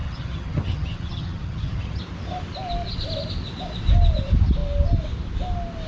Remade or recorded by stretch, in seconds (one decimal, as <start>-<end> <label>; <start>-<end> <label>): 0.0-2.0 remade; 2.0-5.9 recorded